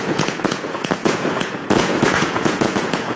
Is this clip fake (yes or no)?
yes